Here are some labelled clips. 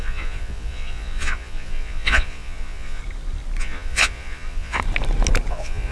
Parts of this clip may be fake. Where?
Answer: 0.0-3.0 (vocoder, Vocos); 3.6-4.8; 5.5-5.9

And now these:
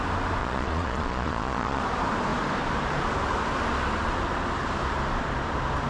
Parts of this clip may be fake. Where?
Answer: 0.4-1.8 (vocoder, Vocos)

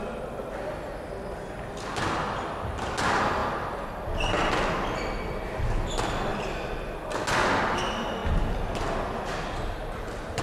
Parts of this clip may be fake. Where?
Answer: none

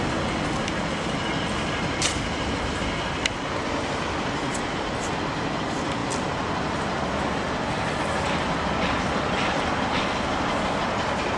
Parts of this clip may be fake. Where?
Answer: none